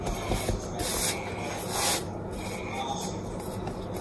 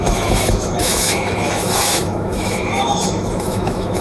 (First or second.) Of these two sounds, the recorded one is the first